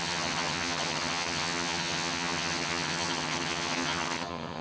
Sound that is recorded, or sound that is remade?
remade